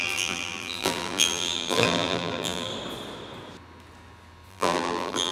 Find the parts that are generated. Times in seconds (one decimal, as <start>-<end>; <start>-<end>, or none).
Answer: 0.0-2.7; 4.5-5.3